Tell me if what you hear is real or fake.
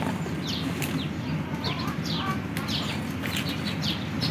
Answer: real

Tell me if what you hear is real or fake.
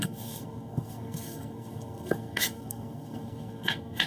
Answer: fake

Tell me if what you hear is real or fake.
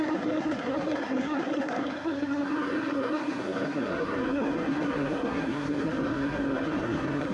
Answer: fake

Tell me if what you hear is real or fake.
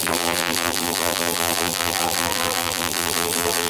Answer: fake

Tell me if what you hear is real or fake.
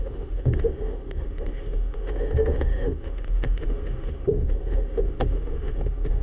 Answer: fake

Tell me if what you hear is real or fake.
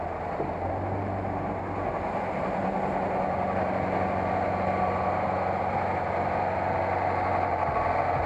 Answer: real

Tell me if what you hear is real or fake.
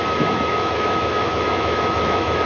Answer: fake